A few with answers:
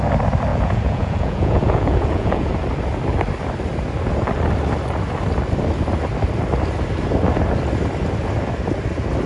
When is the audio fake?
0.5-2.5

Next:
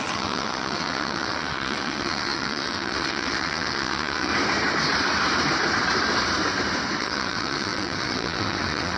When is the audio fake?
0.0-4.3; 7.0-9.0

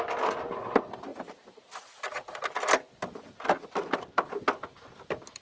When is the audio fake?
1.1-2.0

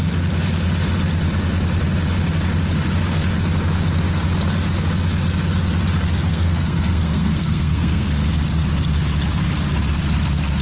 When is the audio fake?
6.3-8.3

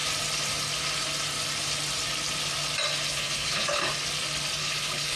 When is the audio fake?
3.1-3.8; 4.6-5.2

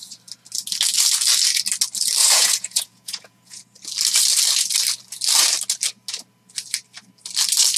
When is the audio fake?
2.2-3.6